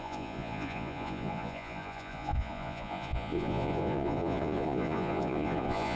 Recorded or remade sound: remade